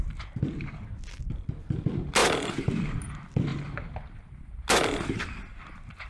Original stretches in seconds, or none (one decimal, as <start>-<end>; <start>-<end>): 0.0-6.1